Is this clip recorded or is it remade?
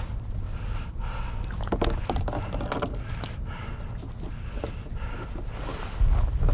recorded